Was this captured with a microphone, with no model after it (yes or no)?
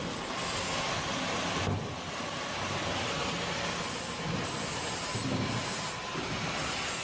yes